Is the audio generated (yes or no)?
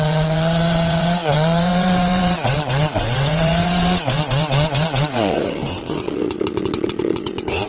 yes